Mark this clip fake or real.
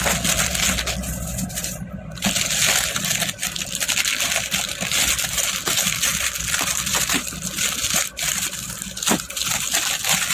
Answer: real